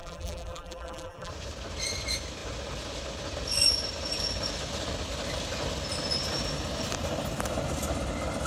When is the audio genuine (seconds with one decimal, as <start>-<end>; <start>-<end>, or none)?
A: 1.3-8.5